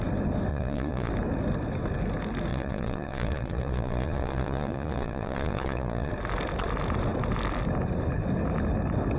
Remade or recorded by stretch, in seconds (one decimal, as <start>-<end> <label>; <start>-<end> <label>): 0.0-0.5 recorded; 0.5-1.1 remade; 1.1-2.5 recorded; 2.5-6.1 remade; 6.1-9.2 recorded